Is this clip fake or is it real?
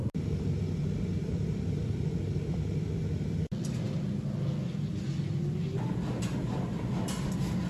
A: real